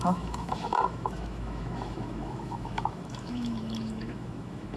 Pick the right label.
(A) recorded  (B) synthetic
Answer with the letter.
B